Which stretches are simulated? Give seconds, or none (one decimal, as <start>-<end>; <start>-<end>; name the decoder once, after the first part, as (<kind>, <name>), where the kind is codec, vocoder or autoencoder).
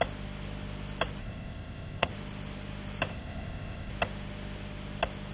1.2-2.1 (codec, ZipCodec); 3.1-3.9